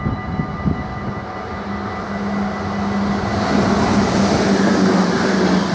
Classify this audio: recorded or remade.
recorded